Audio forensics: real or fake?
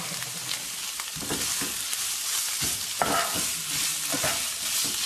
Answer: real